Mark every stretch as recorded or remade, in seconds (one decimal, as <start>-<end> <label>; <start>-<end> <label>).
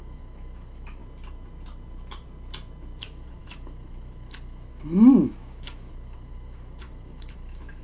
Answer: 0.0-1.0 remade; 1.0-3.0 recorded; 3.0-7.8 remade